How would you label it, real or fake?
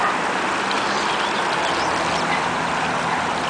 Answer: real